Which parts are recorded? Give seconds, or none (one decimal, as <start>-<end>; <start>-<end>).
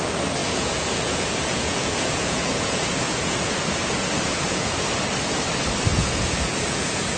0.0-0.4; 4.7-5.9